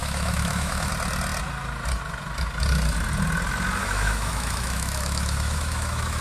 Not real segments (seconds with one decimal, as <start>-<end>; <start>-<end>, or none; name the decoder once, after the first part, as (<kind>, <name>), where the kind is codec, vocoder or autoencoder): 0.0-0.9 (autoencoder, DAC-VAE); 3.8-6.2